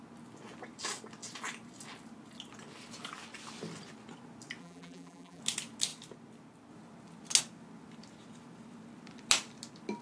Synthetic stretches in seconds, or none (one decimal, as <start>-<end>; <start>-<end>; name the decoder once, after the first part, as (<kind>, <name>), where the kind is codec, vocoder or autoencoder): 4.6-5.4 (vocoder, BigVGAN v2)